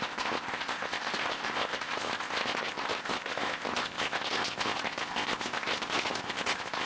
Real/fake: fake